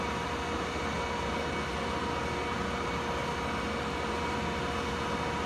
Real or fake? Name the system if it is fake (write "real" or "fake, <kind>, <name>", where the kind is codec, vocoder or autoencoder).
real